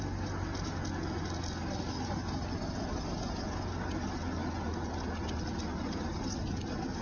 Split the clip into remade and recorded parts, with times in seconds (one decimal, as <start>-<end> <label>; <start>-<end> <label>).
0.0-7.0 recorded